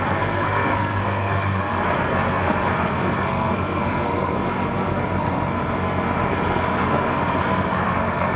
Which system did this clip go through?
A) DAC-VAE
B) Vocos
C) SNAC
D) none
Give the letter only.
C